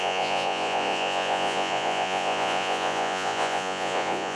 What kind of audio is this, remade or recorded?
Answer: remade